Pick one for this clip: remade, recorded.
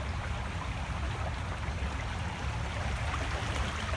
recorded